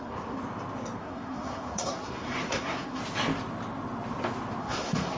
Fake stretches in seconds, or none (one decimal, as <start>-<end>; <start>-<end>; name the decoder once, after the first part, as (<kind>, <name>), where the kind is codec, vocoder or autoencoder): 0.0-0.4 (codec, SNAC); 1.0-3.0; 4.6-5.2